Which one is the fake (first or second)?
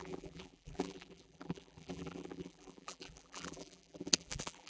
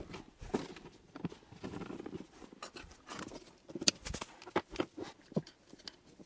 first